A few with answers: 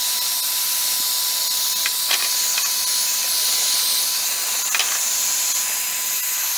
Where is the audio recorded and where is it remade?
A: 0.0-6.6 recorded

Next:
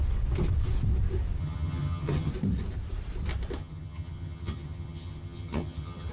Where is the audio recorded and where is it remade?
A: 0.0-1.4 recorded; 1.4-2.3 remade; 2.3-3.6 recorded; 3.6-6.1 remade

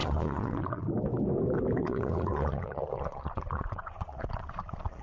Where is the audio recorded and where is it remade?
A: 0.0-0.9 remade; 0.9-1.8 recorded; 1.8-5.0 remade

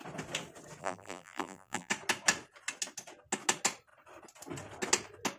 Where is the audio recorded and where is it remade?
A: 0.0-0.8 recorded; 0.8-1.9 remade; 1.9-5.4 recorded

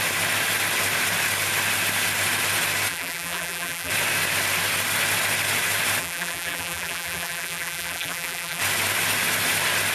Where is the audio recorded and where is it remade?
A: 0.0-2.9 recorded; 2.9-3.9 remade; 3.9-6.0 recorded; 6.0-8.6 remade; 8.6-9.9 recorded